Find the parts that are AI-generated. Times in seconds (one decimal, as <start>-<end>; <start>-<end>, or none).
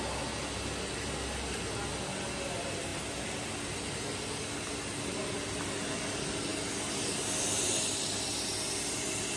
none